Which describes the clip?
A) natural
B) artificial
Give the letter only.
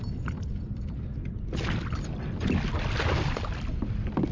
A